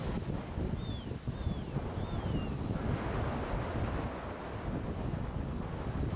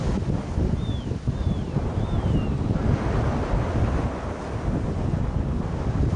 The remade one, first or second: second